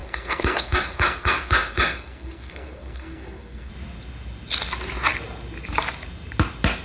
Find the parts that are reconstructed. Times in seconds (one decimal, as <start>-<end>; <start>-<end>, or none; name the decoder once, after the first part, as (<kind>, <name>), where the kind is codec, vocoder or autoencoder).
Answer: 0.0-3.7 (codec, SNAC)